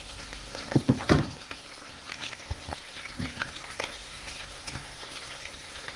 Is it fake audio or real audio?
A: fake